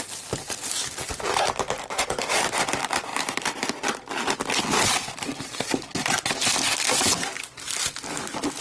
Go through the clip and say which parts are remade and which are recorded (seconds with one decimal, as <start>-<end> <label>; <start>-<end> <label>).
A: 0.0-8.6 recorded